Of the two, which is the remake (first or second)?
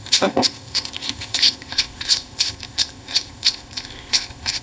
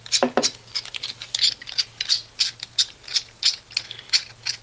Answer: first